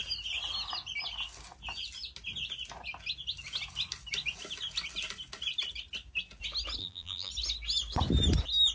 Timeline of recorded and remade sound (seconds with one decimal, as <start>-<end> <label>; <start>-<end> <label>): 0.0-6.8 recorded; 6.8-7.3 remade; 7.3-8.7 recorded